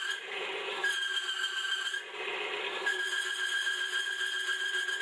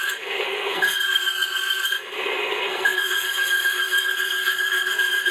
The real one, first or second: first